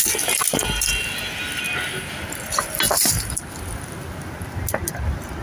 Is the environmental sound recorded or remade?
recorded